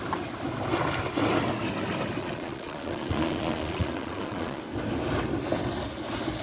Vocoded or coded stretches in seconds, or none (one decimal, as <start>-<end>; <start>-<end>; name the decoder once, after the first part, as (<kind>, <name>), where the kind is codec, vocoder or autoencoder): 2.2-4.6 (vocoder, Vocos)